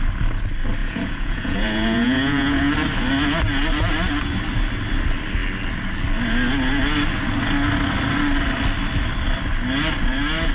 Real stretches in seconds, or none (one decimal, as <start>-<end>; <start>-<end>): 0.0-0.8; 2.6-10.5